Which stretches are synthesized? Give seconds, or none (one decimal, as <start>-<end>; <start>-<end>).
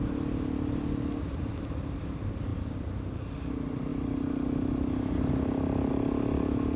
none